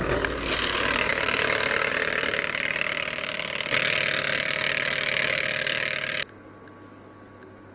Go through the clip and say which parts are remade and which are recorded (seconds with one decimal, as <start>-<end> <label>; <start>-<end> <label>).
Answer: 0.0-7.7 recorded

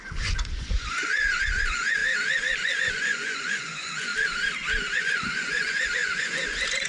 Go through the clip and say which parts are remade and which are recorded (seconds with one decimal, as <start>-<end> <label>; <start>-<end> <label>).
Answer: 0.0-2.0 remade; 2.0-2.6 recorded; 2.6-4.1 remade; 4.1-5.0 recorded; 5.0-6.9 remade

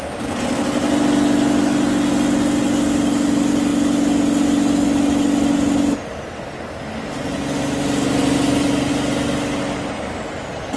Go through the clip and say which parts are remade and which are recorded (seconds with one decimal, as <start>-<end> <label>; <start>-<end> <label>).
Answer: 0.0-10.8 recorded